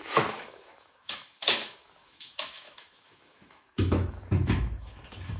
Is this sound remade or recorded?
remade